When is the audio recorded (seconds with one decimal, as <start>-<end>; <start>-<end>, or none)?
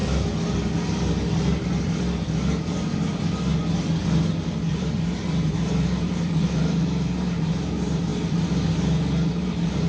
0.0-4.7; 8.1-9.3